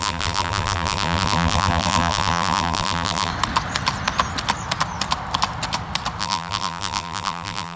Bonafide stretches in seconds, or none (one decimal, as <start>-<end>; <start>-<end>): 3.3-6.2